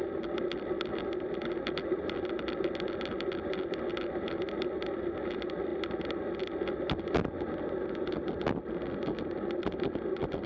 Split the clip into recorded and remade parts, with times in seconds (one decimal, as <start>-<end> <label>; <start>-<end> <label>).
0.0-10.5 recorded